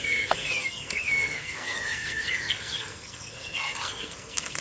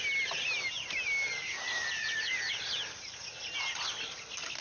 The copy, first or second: first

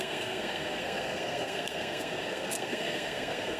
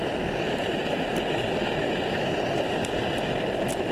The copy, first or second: first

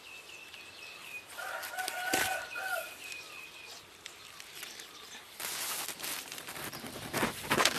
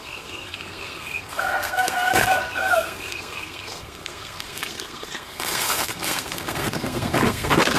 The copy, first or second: second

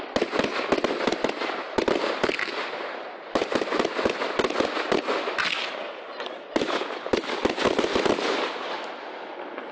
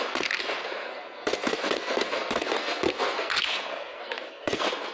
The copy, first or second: second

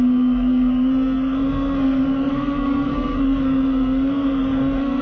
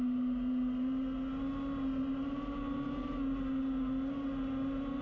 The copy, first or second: first